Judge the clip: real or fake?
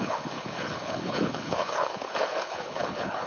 fake